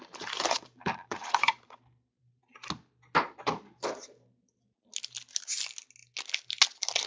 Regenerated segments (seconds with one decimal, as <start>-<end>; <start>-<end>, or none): 0.0-2.4